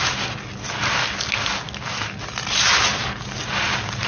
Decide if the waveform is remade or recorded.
recorded